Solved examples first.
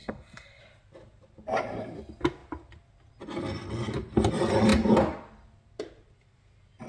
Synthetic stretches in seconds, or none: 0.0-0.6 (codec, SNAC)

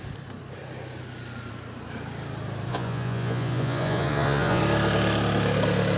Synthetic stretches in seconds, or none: 2.7-4.6 (vocoder, Vocos)